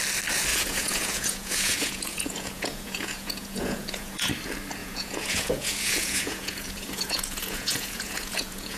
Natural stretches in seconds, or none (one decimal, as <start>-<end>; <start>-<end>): 0.0-0.5; 4.3-4.8